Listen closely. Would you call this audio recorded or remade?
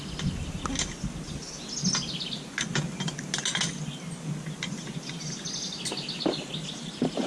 recorded